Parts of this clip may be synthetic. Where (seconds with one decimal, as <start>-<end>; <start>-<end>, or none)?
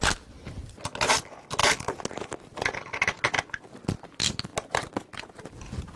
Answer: none